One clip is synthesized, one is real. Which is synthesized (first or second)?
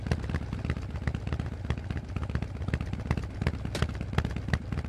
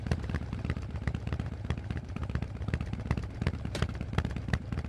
second